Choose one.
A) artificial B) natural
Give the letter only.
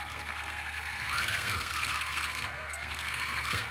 A